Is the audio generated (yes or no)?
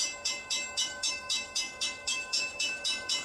yes